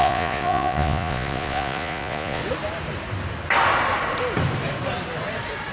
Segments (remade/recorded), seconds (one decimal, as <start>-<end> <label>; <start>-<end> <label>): 0.0-2.4 remade; 2.4-5.7 recorded